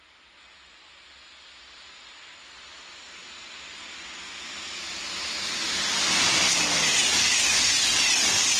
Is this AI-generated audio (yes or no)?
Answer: no